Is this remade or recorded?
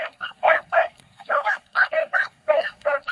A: remade